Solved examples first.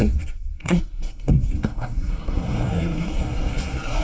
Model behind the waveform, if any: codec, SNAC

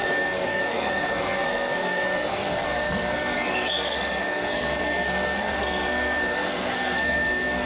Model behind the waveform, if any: codec, SNAC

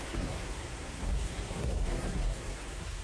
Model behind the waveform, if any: codec, SNAC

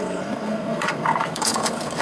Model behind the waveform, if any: codec, SNAC